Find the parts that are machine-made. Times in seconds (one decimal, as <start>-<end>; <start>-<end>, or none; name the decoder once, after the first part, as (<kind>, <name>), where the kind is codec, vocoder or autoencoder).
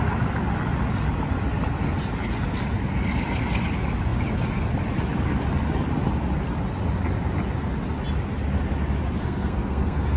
9.2-10.2 (codec, SNAC)